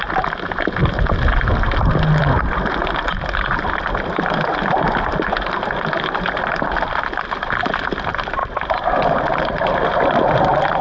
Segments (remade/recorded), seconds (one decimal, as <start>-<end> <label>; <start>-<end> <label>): 0.0-10.8 recorded